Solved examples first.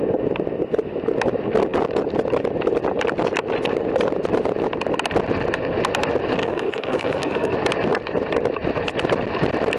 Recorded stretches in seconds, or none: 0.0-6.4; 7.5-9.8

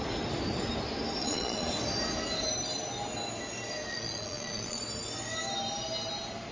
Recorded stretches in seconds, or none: 0.0-1.2; 1.7-3.9; 4.8-6.5